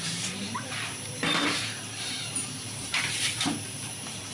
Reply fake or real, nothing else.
fake